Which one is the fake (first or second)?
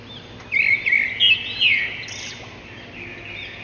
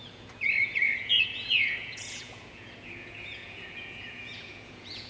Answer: second